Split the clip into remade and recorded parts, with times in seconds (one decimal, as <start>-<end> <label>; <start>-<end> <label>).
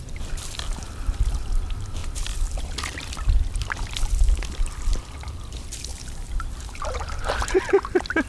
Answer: 0.0-5.9 recorded; 5.9-7.6 remade; 7.6-8.3 recorded